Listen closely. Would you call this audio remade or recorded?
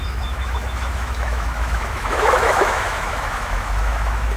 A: remade